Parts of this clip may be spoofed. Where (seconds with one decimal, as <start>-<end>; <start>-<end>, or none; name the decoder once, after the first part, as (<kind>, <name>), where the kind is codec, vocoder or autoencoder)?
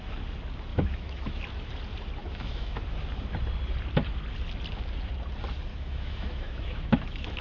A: 0.7-1.4 (autoencoder, DAC-VAE); 2.2-2.8; 5.7-7.4